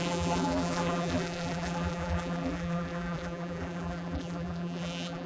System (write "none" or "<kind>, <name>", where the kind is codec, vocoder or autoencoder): vocoder, BigVGAN v2